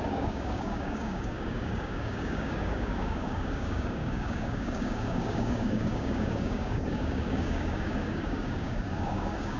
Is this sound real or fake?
fake